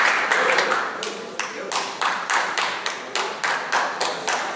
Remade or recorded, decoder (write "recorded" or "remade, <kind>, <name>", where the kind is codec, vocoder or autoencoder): recorded